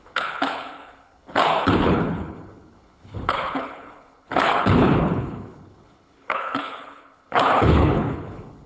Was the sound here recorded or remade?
remade